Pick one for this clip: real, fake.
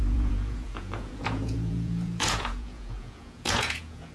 fake